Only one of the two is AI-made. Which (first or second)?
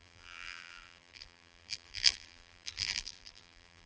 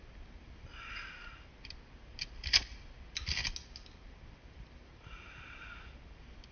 first